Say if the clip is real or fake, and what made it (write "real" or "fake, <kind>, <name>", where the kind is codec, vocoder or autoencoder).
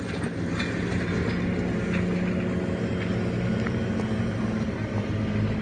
real